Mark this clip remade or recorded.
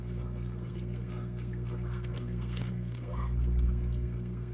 remade